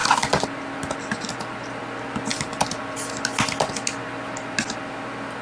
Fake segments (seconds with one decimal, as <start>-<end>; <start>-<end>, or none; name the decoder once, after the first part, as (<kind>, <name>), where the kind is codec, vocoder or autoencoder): 2.3-2.8 (vocoder, BigVGAN v2)